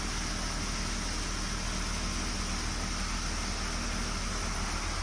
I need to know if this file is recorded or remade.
recorded